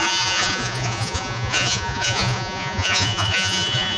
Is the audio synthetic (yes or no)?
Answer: yes